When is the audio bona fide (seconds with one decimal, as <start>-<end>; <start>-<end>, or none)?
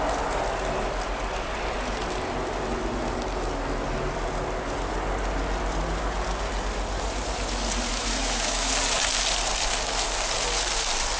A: 0.0-7.9; 8.7-11.2